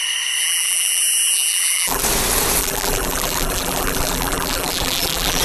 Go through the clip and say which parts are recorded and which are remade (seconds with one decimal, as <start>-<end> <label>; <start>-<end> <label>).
0.0-0.4 recorded; 0.4-2.0 remade; 2.0-2.6 recorded; 2.6-5.4 remade